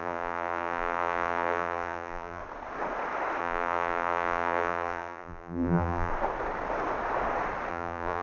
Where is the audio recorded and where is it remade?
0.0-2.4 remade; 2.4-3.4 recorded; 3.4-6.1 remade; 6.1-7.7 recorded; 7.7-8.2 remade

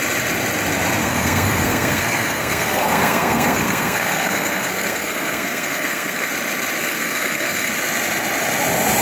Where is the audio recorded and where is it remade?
0.0-1.0 recorded; 1.0-6.3 remade; 6.3-6.8 recorded; 6.8-7.7 remade; 7.7-9.0 recorded

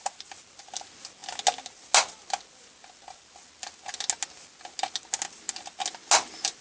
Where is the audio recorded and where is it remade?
0.0-6.6 recorded